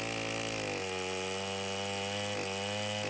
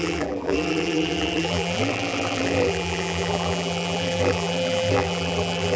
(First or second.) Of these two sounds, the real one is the first